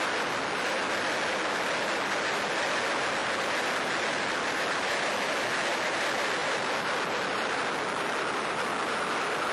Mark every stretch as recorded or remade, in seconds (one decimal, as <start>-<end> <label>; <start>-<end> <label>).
0.0-9.5 recorded